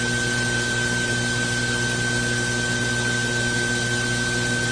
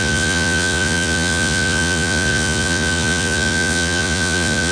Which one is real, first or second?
first